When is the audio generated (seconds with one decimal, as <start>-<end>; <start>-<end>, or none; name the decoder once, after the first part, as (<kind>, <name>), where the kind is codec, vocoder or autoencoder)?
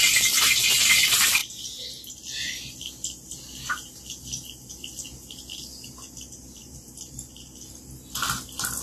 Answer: 6.6-7.3 (vocoder, BigVGAN v2)